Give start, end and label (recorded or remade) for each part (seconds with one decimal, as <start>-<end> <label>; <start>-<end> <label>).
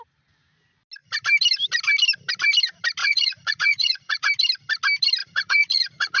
0.0-3.0 recorded; 3.0-4.3 remade; 4.3-5.2 recorded; 5.2-6.2 remade